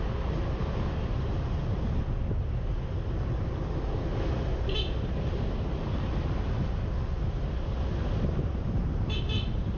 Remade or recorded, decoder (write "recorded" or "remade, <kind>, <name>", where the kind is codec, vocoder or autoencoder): recorded